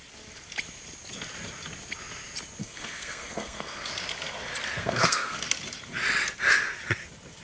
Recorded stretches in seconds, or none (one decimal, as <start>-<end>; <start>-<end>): 0.0-2.6; 3.9-4.8; 5.4-7.4